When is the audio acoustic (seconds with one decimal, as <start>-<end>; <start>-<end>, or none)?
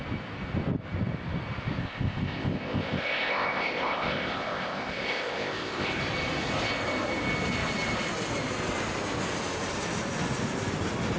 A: 0.0-1.8; 6.0-11.2